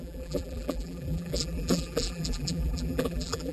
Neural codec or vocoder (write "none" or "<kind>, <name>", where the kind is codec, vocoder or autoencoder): vocoder, BigVGAN v2